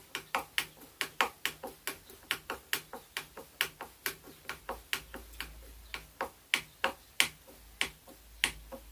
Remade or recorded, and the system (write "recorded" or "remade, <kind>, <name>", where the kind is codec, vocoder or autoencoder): recorded